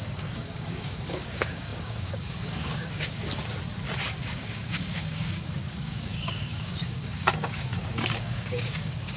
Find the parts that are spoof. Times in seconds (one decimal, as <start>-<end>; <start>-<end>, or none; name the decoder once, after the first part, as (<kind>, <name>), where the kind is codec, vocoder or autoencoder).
0.0-3.3 (codec, DAC); 4.2-9.2